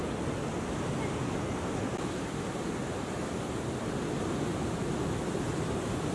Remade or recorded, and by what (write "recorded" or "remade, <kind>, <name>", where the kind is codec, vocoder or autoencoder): recorded